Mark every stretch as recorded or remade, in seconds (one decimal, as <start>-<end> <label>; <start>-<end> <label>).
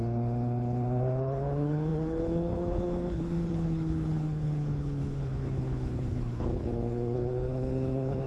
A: 0.0-8.3 remade